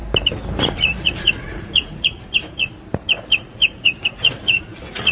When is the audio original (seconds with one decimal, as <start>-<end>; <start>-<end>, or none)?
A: 0.0-0.6; 2.7-3.3